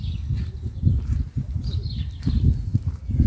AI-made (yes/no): no